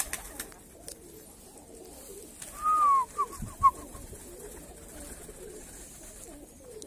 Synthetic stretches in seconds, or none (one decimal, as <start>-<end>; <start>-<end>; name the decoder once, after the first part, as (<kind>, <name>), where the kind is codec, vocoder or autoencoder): none